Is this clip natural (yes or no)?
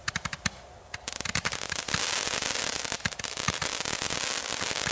yes